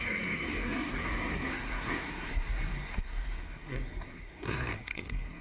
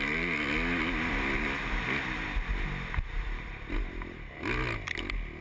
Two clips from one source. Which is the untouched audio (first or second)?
second